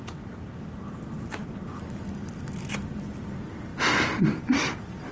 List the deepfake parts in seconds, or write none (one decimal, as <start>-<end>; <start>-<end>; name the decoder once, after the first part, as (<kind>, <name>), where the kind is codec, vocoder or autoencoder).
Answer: none